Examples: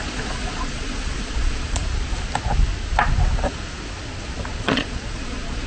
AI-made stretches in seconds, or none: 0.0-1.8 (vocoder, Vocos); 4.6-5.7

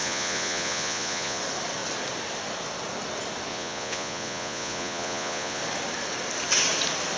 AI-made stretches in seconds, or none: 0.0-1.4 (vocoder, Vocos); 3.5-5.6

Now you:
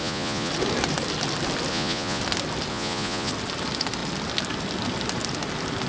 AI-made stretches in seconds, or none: 0.0-0.5 (vocoder, Vocos); 1.7-2.2; 2.7-3.3

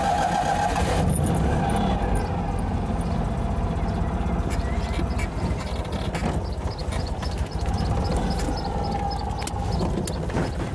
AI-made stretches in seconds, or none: none